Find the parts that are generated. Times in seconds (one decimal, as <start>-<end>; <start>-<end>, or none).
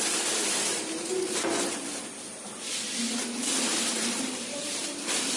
0.7-2.0; 4.0-5.4